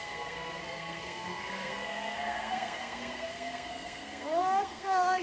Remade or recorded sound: remade